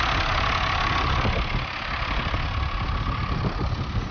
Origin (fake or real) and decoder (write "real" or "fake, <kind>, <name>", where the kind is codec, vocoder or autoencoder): real